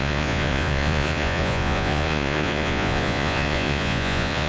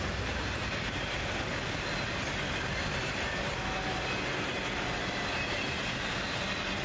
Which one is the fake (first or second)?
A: first